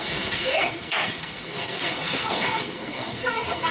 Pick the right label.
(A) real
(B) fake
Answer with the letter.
B